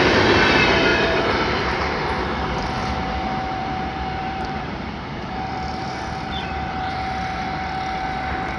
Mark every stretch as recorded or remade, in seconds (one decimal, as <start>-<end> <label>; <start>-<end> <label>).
0.0-0.9 recorded; 0.9-2.0 remade; 2.0-3.6 recorded; 3.6-7.0 remade; 7.0-8.6 recorded